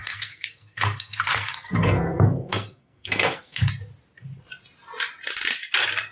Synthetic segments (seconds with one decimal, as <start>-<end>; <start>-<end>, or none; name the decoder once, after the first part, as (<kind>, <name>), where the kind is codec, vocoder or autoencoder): 0.0-3.7 (codec, SNAC)